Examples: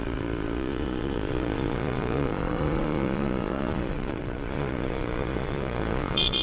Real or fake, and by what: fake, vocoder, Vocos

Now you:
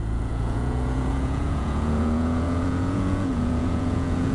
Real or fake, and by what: fake, vocoder, Vocos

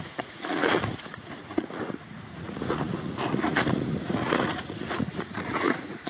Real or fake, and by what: fake, vocoder, Vocos